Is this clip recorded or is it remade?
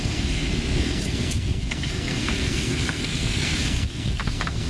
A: remade